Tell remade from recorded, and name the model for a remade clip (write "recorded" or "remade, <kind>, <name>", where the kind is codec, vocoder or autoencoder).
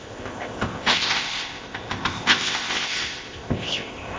remade, codec, ZipCodec